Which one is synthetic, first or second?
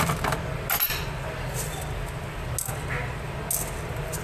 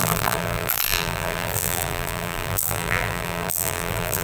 second